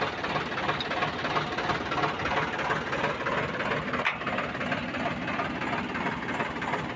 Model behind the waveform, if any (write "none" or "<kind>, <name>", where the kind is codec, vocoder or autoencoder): none